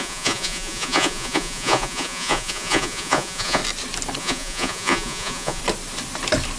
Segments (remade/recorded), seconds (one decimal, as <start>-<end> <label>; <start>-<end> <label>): 0.0-3.6 remade; 3.6-4.2 recorded; 4.2-5.6 remade; 5.6-6.6 recorded